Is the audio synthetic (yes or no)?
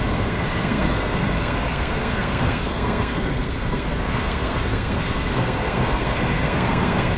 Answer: yes